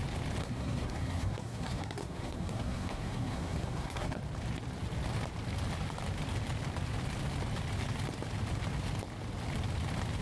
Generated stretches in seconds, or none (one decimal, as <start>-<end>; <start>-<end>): 0.4-4.2